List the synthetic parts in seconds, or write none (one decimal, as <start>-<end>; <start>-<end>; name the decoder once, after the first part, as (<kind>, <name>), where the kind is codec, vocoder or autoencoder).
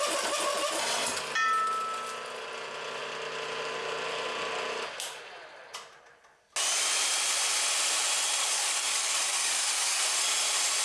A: 8.4-10.0 (codec, DAC)